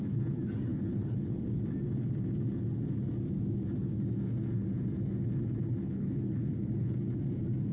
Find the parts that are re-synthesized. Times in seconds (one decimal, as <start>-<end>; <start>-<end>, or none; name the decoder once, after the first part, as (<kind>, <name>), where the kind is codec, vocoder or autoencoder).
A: 0.7-1.6 (codec, HILCodec); 5.8-7.0